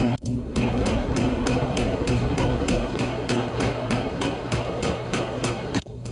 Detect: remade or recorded remade